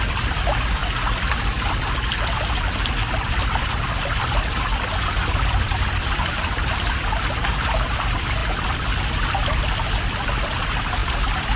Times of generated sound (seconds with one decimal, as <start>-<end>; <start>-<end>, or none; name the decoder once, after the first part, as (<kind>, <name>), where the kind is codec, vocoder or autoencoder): 0.0-0.8 (vocoder, BigVGAN v2); 3.3-11.6